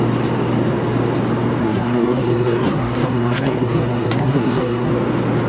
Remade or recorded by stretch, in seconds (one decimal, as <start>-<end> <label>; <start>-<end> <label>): 0.0-1.6 recorded; 1.6-4.9 remade; 4.9-5.5 recorded